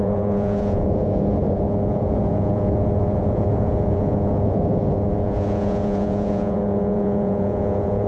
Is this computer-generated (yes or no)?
yes